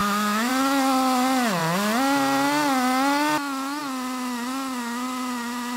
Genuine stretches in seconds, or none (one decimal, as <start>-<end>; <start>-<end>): 0.5-5.8